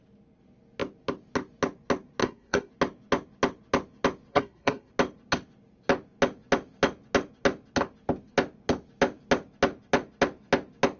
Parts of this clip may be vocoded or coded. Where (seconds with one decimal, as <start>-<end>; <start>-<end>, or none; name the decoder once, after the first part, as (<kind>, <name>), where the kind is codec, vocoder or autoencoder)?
2.2-2.7 (codec, SNAC); 4.3-4.9